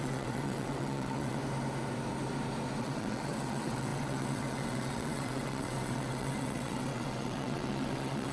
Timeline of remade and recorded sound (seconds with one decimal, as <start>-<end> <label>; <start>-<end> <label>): 0.0-1.4 remade; 1.4-2.8 recorded; 2.8-8.3 remade